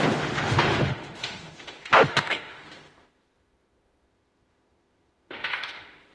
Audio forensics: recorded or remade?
remade